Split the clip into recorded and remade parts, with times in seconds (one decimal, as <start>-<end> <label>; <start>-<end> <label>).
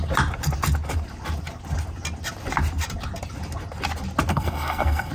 0.0-4.3 recorded; 4.3-5.1 remade